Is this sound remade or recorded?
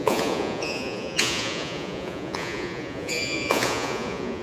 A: remade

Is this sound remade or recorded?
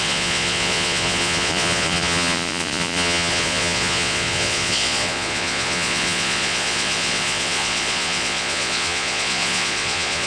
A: remade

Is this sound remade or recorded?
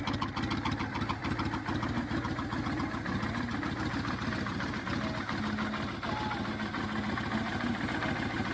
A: recorded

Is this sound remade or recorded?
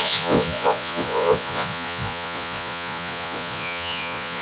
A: remade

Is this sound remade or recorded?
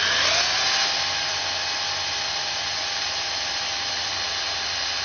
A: recorded